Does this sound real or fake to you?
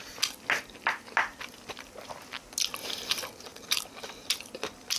real